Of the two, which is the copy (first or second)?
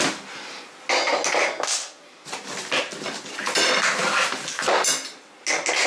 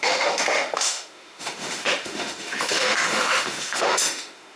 second